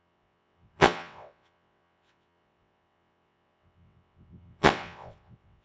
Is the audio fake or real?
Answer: fake